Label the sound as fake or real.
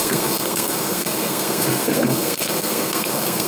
fake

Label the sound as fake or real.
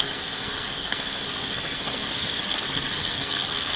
fake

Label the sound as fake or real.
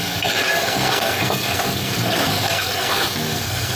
fake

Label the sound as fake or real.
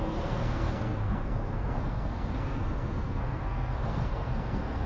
fake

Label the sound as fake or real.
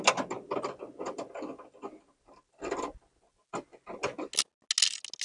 real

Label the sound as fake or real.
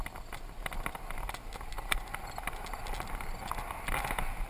real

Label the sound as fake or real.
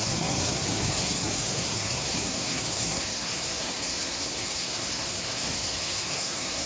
fake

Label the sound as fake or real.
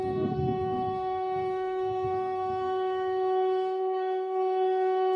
fake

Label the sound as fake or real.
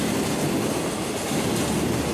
real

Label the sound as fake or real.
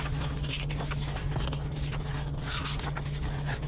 real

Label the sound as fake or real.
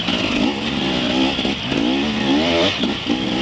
real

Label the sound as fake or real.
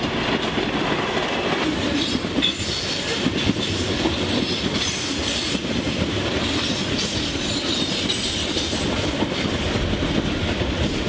real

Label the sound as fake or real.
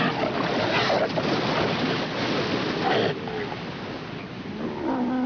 real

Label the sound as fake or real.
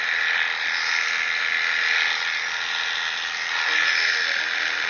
real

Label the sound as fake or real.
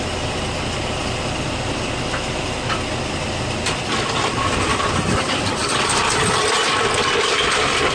real